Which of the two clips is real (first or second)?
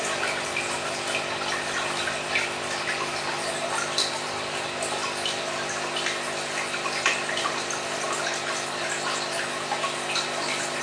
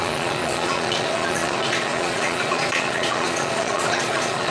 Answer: first